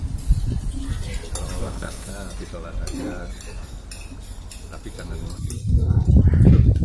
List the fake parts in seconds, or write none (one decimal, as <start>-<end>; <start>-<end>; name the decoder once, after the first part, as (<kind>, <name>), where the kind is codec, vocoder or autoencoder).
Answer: 1.6-2.1 (codec, SNAC)

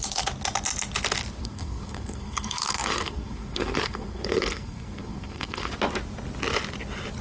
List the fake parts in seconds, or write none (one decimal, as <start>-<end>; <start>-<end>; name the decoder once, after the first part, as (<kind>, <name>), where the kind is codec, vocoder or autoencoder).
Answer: 1.4-5.7 (codec, SNAC)

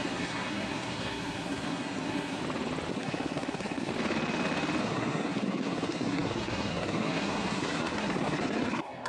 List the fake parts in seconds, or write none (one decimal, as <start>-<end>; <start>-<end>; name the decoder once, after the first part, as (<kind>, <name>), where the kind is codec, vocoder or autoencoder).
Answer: 0.0-2.4 (codec, SNAC); 2.9-3.9; 4.8-9.1

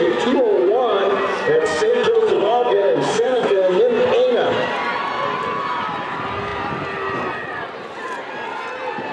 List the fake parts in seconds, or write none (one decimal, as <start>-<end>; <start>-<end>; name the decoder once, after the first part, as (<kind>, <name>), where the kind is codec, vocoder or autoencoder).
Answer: 1.6-3.8 (codec, SNAC)

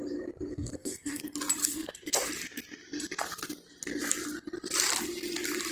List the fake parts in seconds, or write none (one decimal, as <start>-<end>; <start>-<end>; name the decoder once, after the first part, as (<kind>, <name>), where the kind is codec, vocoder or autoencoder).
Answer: 0.5-1.2 (codec, SNAC); 1.6-2.3